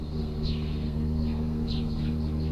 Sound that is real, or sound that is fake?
fake